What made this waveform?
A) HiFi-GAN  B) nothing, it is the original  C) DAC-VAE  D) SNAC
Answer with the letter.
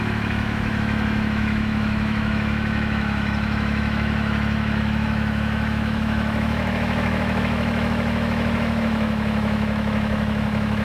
C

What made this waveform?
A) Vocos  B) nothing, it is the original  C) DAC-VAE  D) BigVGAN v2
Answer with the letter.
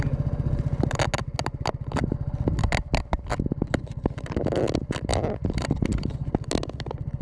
B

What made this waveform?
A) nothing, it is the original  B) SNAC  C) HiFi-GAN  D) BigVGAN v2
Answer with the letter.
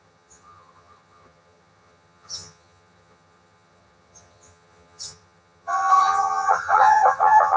C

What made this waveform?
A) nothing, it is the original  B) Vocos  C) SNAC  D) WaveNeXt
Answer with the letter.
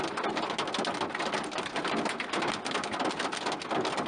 A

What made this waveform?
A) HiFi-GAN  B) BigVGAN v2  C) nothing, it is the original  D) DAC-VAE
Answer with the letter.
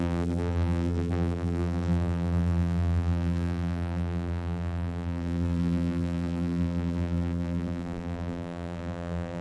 B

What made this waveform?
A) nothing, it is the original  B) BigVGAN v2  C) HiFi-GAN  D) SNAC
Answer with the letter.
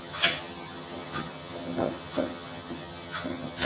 C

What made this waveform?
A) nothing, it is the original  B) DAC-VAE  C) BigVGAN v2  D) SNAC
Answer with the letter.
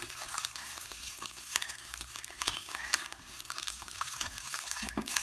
D